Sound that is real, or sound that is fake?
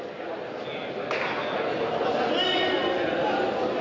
real